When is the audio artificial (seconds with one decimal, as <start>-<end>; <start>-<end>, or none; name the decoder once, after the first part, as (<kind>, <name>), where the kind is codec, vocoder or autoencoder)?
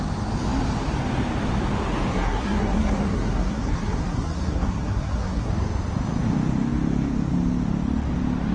2.1-5.5 (codec, SNAC)